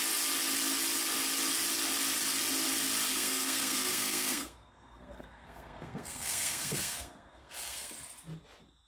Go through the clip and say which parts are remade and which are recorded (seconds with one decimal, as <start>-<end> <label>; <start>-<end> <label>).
0.0-3.1 recorded; 3.1-7.9 remade; 7.9-8.9 recorded